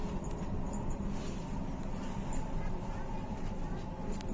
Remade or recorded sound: recorded